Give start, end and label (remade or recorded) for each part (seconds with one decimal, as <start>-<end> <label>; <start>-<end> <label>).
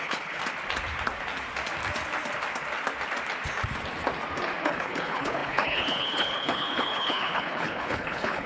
0.0-0.4 remade; 0.4-4.6 recorded; 4.6-8.5 remade